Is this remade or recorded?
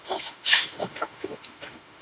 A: remade